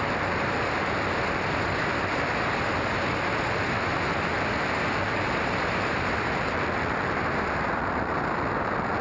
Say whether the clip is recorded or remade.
recorded